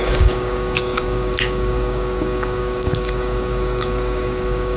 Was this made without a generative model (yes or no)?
no